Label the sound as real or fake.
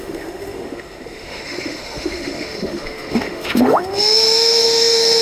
fake